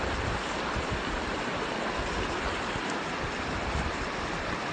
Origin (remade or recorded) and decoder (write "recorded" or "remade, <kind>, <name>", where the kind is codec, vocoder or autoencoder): recorded